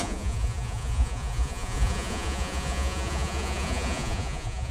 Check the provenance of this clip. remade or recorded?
remade